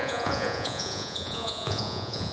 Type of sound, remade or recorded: remade